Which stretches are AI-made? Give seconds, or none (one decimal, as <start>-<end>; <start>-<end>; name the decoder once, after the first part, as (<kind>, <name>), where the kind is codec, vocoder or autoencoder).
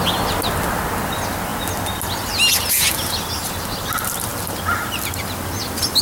none